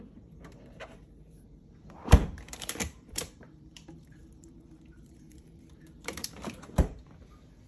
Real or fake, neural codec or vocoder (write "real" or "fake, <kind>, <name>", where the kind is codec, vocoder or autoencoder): fake, vocoder, BigVGAN v2